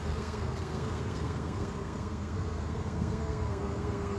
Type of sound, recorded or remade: remade